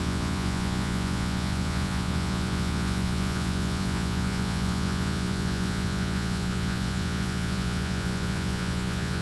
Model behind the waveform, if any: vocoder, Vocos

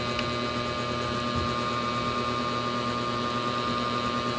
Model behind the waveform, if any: none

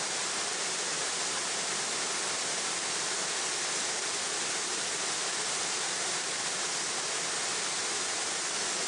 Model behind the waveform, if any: none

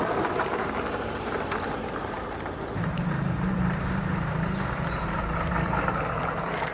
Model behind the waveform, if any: vocoder, BigVGAN v2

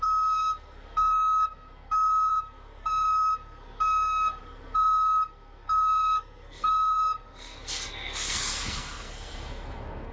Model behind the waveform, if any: codec, SNAC